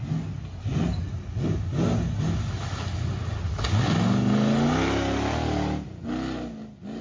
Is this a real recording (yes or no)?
yes